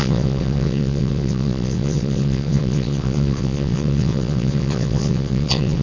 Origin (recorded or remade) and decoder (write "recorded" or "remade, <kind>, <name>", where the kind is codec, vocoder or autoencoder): remade, vocoder, WaveNeXt